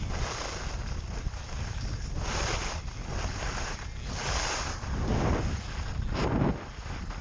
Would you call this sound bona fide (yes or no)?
yes